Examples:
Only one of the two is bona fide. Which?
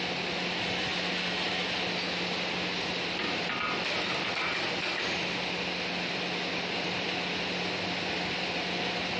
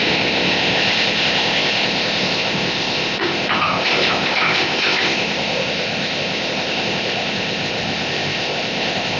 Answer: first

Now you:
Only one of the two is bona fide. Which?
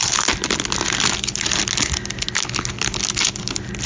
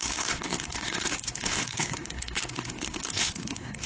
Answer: first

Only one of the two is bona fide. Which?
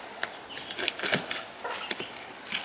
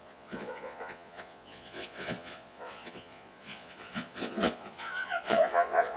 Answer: first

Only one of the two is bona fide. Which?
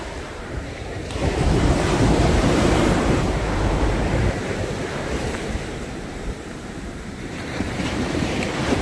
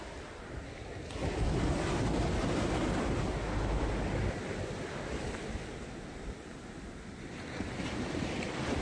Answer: second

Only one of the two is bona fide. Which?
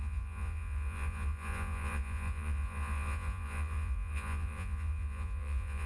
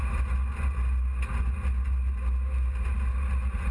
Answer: second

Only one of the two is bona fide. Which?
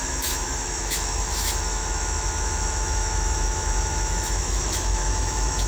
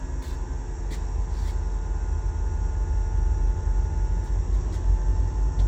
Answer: second